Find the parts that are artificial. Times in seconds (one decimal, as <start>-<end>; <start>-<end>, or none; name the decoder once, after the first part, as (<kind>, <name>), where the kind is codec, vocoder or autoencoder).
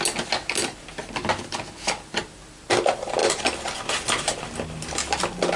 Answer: none